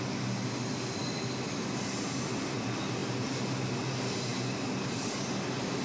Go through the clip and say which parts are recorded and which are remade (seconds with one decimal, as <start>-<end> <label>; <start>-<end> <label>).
0.0-5.8 recorded